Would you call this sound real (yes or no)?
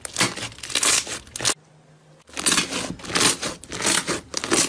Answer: yes